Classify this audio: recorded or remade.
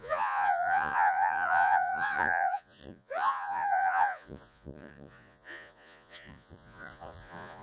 remade